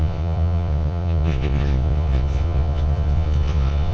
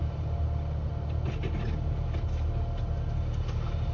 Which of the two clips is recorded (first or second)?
second